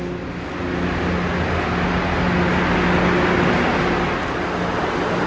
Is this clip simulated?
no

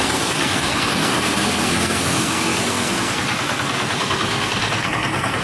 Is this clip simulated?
yes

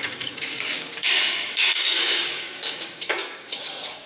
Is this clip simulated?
yes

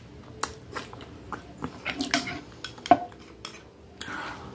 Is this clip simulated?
no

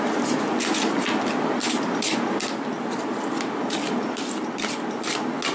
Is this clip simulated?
no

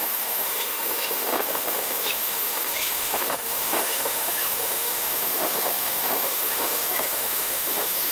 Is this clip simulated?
yes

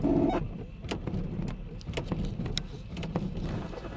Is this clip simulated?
no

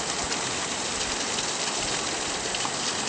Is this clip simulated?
no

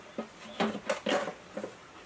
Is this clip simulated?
no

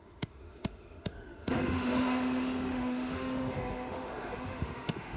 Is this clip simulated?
yes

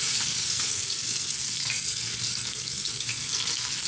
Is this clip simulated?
yes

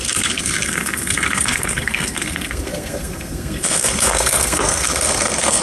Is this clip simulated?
yes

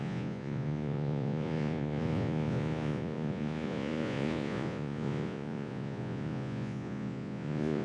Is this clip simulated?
yes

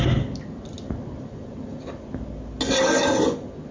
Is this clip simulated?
no